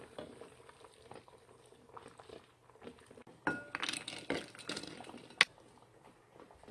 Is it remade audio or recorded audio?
recorded